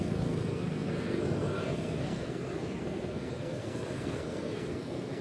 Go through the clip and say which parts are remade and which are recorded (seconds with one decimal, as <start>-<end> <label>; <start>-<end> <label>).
0.0-5.2 remade